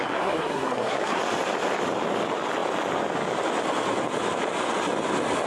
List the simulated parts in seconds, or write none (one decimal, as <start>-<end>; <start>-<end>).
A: 0.0-1.2